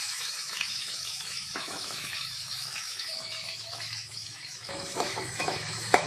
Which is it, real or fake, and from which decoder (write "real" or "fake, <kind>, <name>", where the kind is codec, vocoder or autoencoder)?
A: fake, autoencoder, DAC-VAE